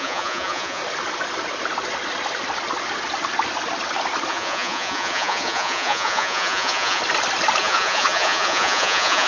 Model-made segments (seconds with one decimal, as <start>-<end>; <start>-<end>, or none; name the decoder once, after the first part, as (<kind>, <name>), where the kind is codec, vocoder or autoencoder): 0.0-0.8 (vocoder, Vocos); 4.3-7.0; 7.6-9.3